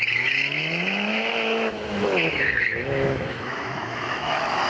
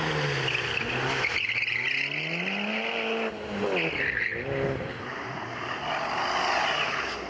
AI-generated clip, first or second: first